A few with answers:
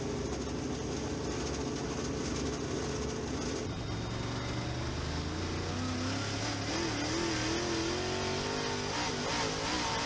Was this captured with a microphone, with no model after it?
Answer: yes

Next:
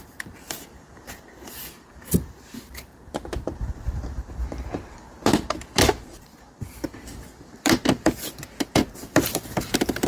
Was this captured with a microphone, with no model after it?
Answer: no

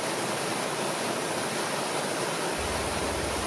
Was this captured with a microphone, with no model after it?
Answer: yes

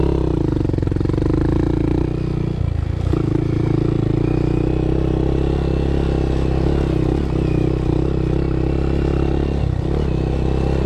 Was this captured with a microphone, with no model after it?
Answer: yes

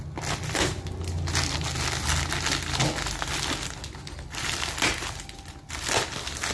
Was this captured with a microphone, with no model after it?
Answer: yes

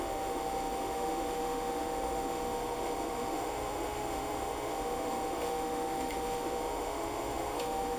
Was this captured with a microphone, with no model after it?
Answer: no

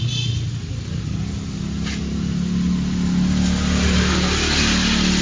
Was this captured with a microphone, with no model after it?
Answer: yes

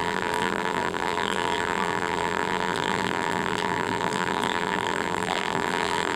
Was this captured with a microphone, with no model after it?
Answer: no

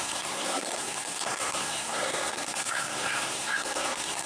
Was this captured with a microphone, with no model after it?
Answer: no